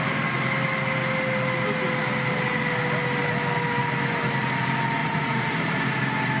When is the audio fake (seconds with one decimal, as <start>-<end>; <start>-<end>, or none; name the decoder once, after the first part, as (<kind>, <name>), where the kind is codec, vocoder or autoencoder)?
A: 5.0-5.7 (vocoder, Vocos)